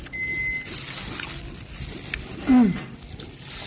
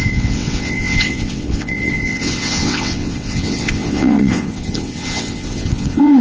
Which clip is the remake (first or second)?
second